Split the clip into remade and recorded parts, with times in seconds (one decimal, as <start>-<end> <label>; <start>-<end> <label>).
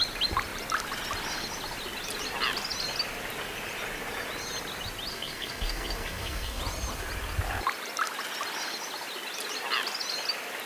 0.0-5.1 recorded; 5.1-6.6 remade; 6.6-10.7 recorded